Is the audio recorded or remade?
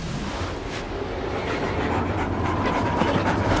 recorded